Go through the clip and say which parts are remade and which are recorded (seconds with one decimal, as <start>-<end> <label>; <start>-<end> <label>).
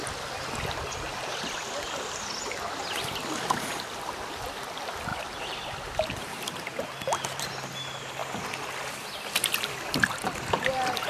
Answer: 0.0-4.0 recorded; 4.0-5.1 remade; 5.1-7.4 recorded; 7.4-11.1 remade